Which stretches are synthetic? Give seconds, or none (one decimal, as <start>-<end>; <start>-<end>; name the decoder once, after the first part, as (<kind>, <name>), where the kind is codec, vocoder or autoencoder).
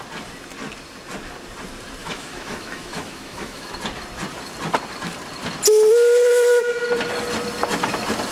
2.0-3.7 (autoencoder, DAC-VAE)